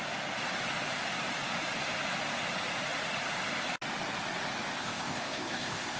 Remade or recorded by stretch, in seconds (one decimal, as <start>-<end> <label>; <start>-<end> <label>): 0.0-4.8 recorded; 4.8-6.0 remade